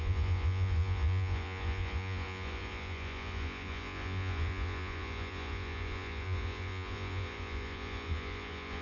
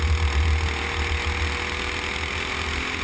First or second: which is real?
second